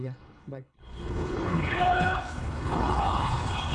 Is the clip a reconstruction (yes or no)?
yes